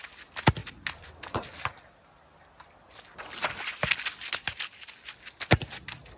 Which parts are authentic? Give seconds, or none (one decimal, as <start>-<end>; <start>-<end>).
0.0-6.2